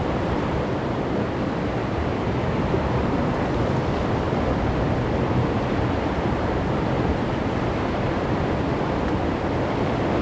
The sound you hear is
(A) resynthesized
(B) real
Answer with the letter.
A